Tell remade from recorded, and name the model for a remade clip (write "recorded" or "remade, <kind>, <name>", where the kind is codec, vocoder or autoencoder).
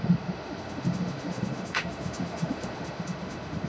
remade, autoencoder, DAC-VAE